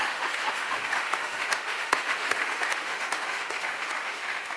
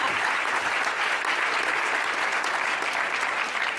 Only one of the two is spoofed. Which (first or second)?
first